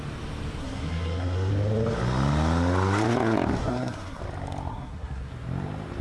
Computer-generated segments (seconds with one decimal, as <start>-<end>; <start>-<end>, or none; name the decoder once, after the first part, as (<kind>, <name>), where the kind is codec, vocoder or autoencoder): 0.6-1.5 (codec, SNAC); 3.6-4.2; 4.7-5.3

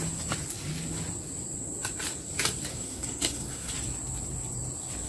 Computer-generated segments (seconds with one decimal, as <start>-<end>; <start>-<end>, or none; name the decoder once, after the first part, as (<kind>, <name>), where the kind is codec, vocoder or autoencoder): 2.7-3.7 (codec, SNAC)

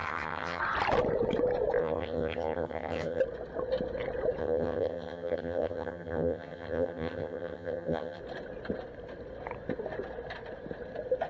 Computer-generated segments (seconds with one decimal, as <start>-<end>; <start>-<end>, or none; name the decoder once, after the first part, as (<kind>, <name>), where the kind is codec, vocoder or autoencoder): 0.0-0.6 (vocoder, HiFi-GAN); 1.8-3.2; 4.4-8.2

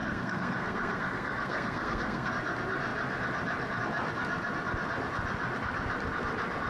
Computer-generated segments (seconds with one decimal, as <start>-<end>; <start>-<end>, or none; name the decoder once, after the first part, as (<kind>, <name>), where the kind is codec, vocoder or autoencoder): 0.0-2.3 (codec, SNAC)

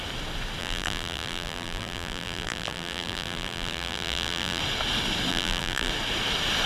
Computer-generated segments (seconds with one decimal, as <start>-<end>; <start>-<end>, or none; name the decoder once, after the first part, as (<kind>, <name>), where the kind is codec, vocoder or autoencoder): 0.6-4.6 (vocoder, BigVGAN v2); 5.3-5.9